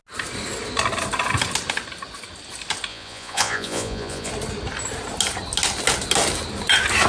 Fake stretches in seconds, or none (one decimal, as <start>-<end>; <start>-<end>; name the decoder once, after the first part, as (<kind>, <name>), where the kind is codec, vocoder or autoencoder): 2.9-4.3 (vocoder, Vocos)